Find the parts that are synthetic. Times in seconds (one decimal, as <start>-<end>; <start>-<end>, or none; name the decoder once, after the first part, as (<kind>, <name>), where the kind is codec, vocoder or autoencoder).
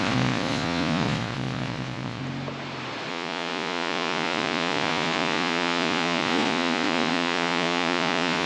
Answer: 0.0-2.2 (vocoder, Vocos); 3.1-8.5